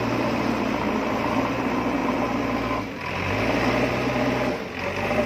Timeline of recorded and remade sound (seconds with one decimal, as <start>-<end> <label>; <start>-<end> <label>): 0.0-5.3 recorded